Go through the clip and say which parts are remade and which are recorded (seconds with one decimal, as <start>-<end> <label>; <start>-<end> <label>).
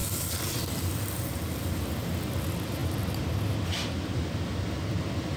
0.0-5.4 recorded